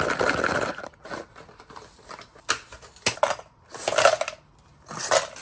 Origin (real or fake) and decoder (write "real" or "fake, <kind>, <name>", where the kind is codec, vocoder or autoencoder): real